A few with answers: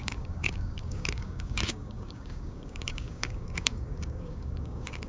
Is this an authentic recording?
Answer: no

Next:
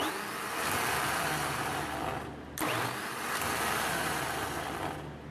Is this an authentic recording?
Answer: yes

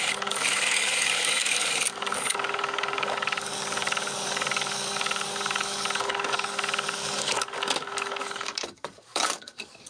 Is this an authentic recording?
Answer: no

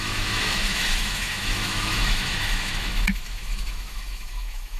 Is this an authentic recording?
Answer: no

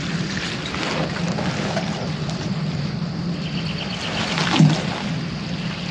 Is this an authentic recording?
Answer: yes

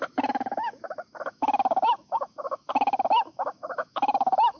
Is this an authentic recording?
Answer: no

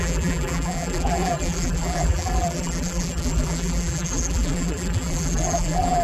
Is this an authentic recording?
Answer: no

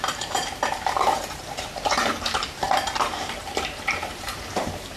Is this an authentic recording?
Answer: no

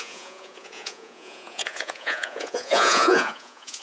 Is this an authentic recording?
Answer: no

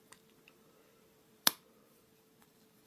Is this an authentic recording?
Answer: no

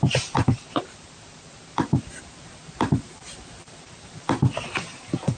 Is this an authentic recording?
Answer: no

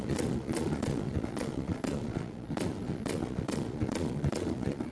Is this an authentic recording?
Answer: no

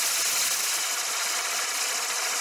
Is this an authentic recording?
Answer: yes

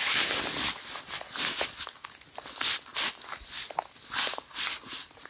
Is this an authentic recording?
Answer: yes